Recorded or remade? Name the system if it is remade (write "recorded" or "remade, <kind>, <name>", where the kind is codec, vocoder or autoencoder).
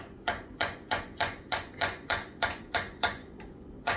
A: remade, vocoder, Vocos